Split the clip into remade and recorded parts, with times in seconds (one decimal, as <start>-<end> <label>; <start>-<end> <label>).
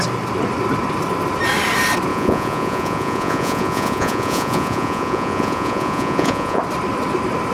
0.0-2.1 recorded; 2.1-6.6 remade; 6.6-7.5 recorded